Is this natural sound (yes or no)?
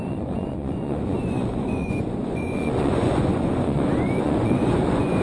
no